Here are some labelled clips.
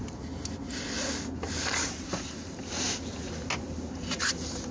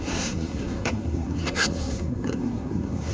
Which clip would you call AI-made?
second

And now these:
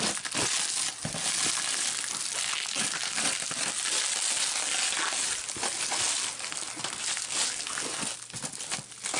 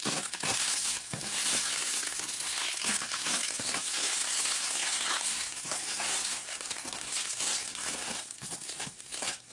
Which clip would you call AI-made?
second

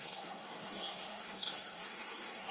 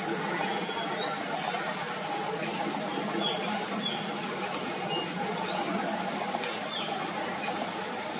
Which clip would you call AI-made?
first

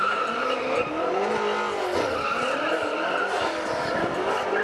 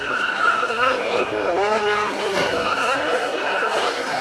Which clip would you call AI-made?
second